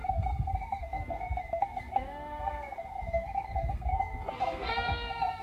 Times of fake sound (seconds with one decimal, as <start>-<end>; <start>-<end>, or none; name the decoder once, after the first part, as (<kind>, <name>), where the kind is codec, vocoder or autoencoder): 0.0-5.4 (codec, SNAC)